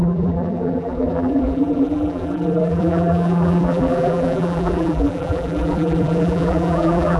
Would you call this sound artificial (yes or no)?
yes